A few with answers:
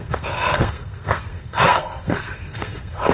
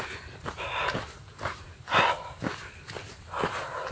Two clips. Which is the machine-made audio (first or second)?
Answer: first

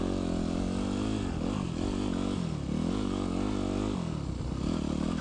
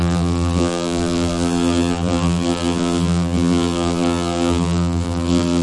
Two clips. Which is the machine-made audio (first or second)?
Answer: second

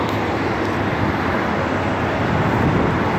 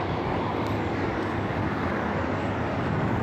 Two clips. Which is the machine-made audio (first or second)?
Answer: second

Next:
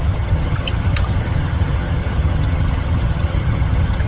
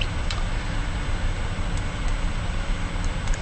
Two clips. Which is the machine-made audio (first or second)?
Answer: first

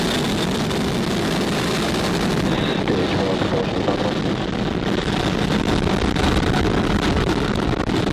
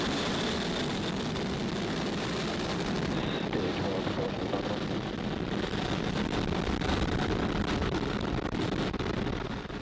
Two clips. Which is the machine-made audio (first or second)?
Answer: second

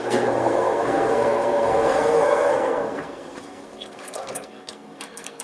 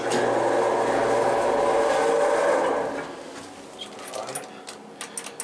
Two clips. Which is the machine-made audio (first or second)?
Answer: first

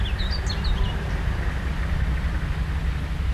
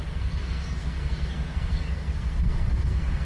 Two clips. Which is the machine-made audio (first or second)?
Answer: second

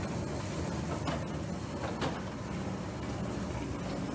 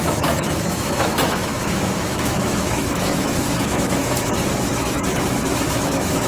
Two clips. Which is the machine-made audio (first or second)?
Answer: second